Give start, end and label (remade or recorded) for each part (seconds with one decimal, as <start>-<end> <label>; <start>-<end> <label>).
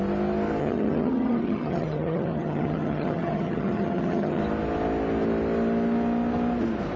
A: 0.0-0.6 recorded; 0.6-4.4 remade; 4.4-7.0 recorded